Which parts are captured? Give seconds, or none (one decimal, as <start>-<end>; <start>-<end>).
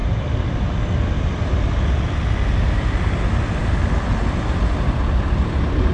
0.0-5.9